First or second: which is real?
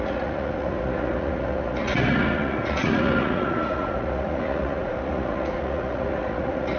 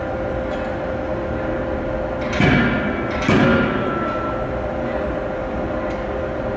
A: second